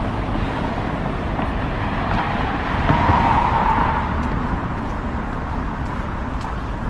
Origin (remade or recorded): recorded